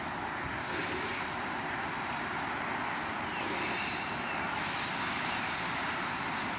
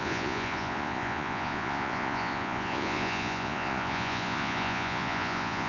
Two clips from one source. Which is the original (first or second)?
first